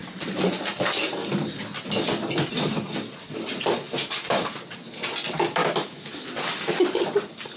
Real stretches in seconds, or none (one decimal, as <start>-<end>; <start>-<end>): 0.0-5.6; 6.3-7.6